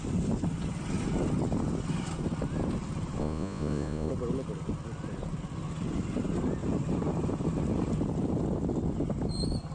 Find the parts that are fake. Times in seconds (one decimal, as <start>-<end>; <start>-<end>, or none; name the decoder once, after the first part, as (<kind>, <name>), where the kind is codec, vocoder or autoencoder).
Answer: 3.2-4.1 (vocoder, Vocos)